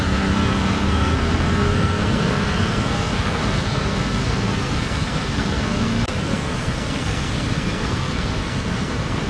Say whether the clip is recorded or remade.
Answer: remade